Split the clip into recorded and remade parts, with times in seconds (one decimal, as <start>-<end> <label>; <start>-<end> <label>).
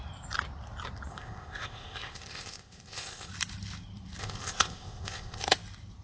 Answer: 0.0-1.1 recorded; 1.1-3.3 remade; 3.3-4.2 recorded; 4.2-5.4 remade; 5.4-6.0 recorded